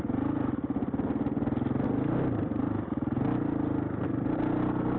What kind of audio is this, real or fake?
real